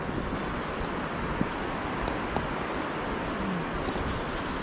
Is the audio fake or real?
real